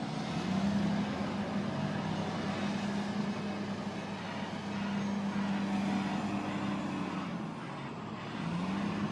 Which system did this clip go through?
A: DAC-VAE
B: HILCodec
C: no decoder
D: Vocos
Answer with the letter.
C